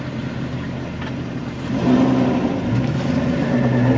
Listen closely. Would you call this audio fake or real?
real